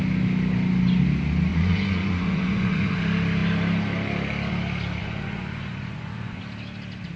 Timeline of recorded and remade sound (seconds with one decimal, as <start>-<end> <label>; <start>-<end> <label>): 0.0-1.5 recorded; 1.5-3.0 remade; 3.0-5.0 recorded; 5.0-6.4 remade; 6.4-7.2 recorded